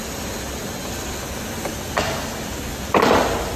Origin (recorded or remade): recorded